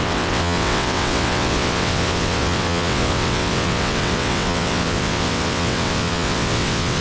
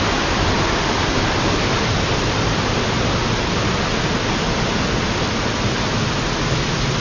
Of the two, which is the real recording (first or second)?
second